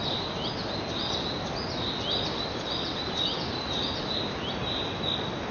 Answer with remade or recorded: recorded